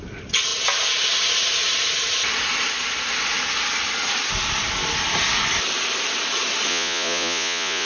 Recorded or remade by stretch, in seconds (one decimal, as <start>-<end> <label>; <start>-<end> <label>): 0.0-6.7 recorded; 6.7-7.9 remade